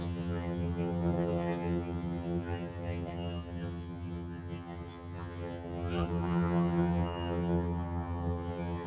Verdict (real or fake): fake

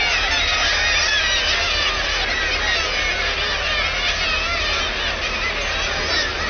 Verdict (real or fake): real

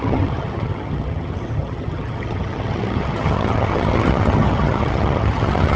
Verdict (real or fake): fake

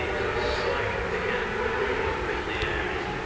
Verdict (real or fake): real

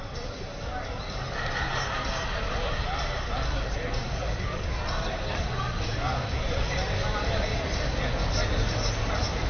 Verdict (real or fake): real